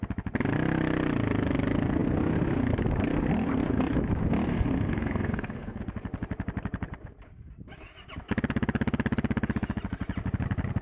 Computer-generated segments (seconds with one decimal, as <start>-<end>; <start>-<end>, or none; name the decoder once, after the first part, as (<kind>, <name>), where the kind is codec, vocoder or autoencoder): 4.5-5.8 (codec, SNAC)